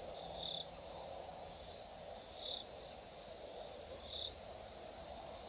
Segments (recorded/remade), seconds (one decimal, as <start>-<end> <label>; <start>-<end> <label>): 0.0-1.3 remade; 1.3-4.1 recorded; 4.1-5.5 remade